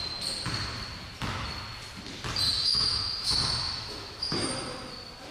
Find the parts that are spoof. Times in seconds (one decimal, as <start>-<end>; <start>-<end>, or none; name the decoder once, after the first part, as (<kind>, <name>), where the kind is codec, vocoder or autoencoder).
2.5-4.5 (autoencoder, DAC-VAE)